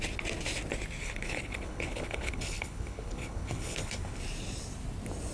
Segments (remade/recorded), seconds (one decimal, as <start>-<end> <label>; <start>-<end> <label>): 0.0-1.0 recorded; 1.0-4.2 remade; 4.2-5.3 recorded